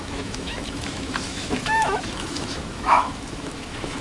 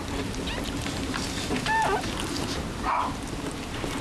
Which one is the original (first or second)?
second